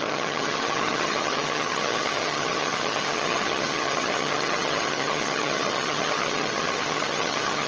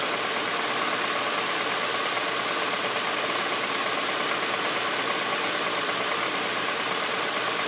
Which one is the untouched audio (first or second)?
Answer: second